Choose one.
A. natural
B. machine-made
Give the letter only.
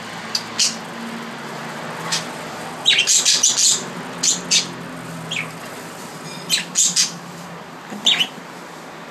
A